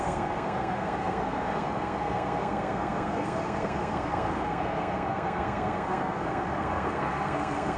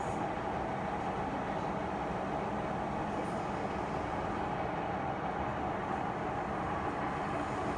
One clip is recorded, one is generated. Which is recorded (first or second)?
second